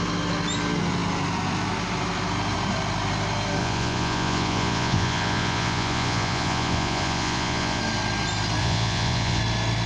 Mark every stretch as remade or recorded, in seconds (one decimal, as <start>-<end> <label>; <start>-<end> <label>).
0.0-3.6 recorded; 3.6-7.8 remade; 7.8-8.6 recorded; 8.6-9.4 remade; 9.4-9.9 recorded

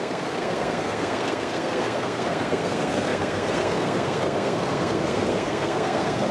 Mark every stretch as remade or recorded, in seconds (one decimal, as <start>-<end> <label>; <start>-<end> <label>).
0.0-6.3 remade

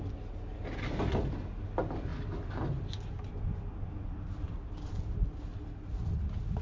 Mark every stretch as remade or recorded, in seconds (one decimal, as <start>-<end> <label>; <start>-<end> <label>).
0.0-6.6 recorded

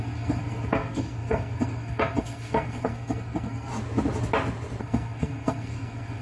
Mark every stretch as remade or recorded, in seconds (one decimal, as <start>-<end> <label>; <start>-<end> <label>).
0.0-3.7 remade; 3.7-4.8 recorded; 4.8-6.2 remade

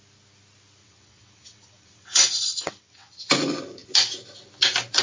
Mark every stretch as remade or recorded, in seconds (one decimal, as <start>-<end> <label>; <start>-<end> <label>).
0.0-0.8 recorded; 0.8-3.3 remade; 3.3-5.0 recorded

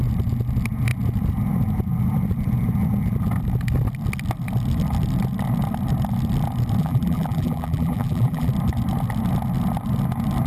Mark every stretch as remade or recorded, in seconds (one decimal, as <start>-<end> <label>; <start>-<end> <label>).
0.0-6.8 recorded; 6.8-8.5 remade; 8.5-10.5 recorded

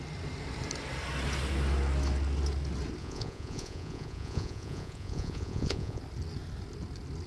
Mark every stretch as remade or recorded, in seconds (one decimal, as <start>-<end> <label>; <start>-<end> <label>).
0.0-3.0 recorded; 3.0-6.0 remade; 6.0-7.3 recorded